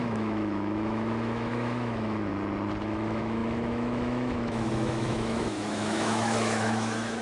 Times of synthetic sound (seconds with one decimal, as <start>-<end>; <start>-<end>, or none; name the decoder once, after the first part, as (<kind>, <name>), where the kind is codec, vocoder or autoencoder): 0.0-2.3 (autoencoder, DAC-VAE); 2.8-7.2